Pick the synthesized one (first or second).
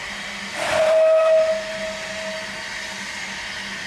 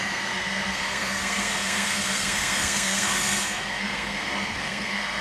second